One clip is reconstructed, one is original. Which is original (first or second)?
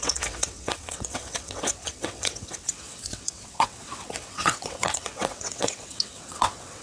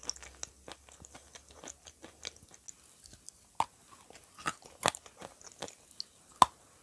second